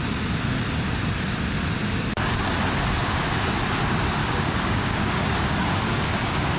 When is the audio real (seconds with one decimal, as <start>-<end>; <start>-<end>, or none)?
0.0-4.2